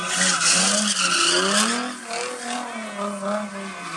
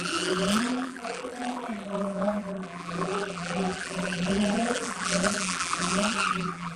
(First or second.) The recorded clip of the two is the first